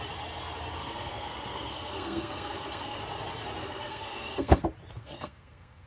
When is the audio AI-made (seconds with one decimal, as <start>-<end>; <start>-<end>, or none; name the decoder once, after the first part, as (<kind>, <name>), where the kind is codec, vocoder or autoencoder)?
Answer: 0.8-3.0 (codec, SNAC); 3.6-4.6; 5.0-5.9